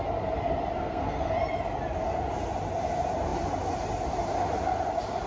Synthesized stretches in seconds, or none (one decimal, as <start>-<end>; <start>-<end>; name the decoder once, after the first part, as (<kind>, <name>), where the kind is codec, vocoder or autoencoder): 0.8-1.3 (codec, SNAC)